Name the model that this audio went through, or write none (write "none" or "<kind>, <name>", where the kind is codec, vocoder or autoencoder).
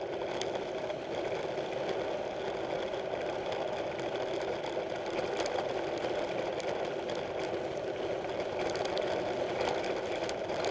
none